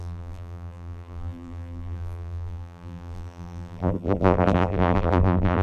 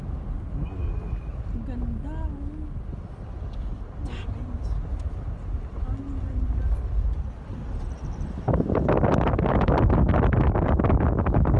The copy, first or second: first